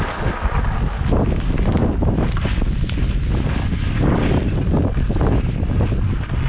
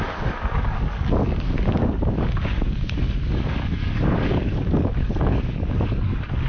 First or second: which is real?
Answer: first